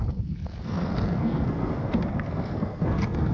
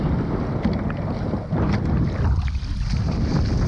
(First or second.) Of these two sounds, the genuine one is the second